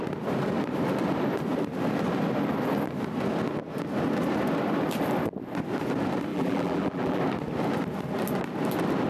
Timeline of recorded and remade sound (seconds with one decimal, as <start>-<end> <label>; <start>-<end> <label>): 0.0-6.3 recorded; 6.3-7.2 remade; 7.2-9.1 recorded